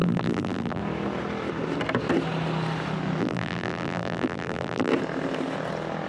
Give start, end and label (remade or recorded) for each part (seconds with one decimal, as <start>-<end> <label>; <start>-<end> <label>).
0.0-0.8 remade; 0.8-3.2 recorded; 3.2-4.9 remade; 4.9-6.1 recorded